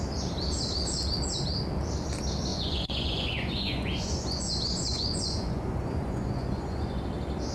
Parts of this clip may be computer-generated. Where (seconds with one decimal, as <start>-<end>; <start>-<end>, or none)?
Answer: 2.5-7.0